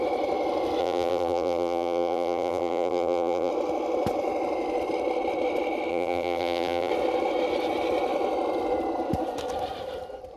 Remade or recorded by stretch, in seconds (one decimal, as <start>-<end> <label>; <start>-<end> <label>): 0.0-0.8 recorded; 0.8-3.5 remade; 3.5-5.9 recorded; 5.9-6.9 remade; 6.9-10.4 recorded